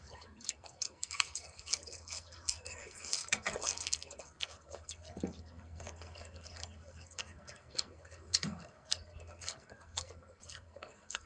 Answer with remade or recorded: remade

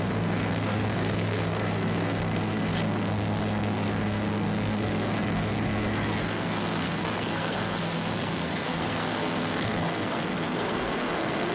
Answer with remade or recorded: remade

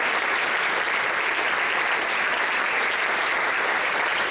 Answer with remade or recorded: recorded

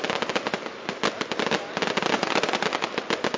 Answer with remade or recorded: recorded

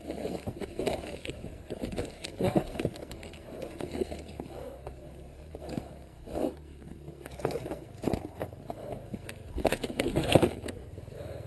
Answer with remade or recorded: remade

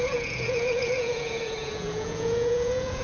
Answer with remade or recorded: remade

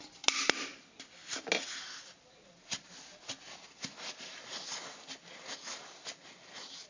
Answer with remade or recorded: recorded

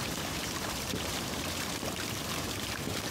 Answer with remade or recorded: remade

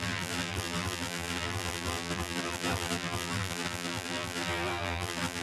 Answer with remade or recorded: remade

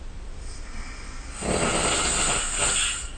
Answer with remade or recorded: recorded